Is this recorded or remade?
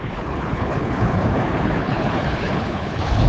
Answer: remade